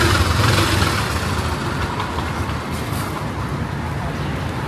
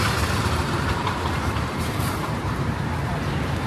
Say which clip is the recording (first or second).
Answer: first